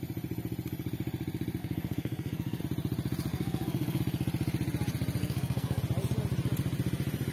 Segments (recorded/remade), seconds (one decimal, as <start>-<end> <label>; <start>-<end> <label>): 0.0-1.6 recorded; 1.6-2.6 remade; 2.6-3.3 recorded; 3.3-4.0 remade; 4.0-5.2 recorded; 5.2-5.8 remade; 5.8-7.3 recorded